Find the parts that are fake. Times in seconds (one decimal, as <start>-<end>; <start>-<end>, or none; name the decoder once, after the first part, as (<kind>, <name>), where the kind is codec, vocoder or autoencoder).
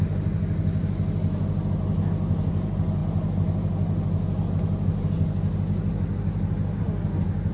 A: none